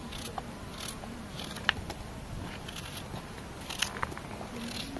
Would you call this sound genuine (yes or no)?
yes